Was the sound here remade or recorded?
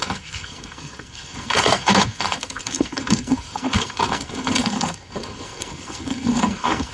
remade